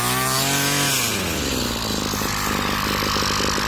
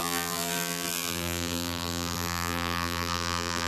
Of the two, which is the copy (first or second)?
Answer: second